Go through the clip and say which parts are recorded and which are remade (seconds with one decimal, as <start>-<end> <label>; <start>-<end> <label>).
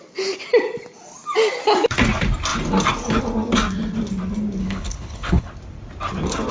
0.0-4.6 recorded; 4.6-5.5 remade; 5.5-6.5 recorded